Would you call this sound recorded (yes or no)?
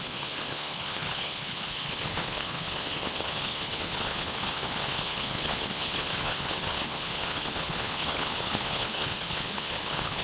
no